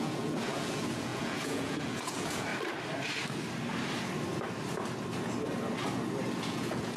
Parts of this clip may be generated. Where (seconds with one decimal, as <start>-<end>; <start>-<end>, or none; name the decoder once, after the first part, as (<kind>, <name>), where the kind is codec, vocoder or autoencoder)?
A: 0.0-2.5 (vocoder, Vocos); 6.4-7.0

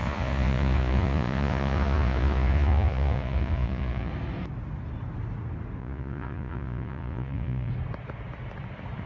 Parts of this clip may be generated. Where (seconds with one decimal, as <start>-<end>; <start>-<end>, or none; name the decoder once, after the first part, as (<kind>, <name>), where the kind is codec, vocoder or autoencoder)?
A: 0.0-4.1 (vocoder, Vocos); 5.8-7.7

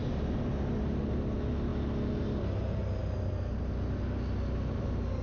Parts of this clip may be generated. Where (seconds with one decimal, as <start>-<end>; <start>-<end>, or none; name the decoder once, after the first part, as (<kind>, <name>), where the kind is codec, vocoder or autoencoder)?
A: none

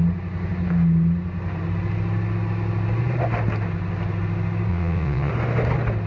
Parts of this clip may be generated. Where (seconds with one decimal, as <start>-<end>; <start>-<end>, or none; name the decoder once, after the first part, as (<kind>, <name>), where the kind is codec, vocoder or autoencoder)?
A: 4.7-5.3 (vocoder, Vocos)

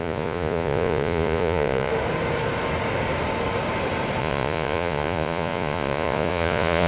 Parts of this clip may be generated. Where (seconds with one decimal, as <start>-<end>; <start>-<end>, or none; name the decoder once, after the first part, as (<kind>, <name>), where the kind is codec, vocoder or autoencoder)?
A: 0.0-1.9 (vocoder, Vocos); 4.2-6.9

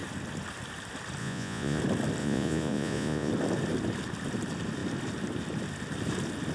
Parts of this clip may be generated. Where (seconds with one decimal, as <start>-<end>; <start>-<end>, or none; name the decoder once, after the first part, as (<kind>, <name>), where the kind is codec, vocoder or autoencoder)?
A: 1.2-1.8 (vocoder, Vocos); 2.2-3.3

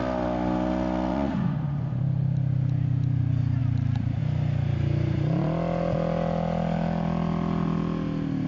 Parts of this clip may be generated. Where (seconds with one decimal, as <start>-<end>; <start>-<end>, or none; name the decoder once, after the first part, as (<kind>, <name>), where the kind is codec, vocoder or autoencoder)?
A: 1.1-2.0 (vocoder, Vocos)